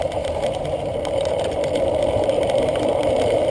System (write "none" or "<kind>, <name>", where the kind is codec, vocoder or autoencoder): vocoder, BigVGAN v2